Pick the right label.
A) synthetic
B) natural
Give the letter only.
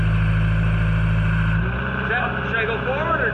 B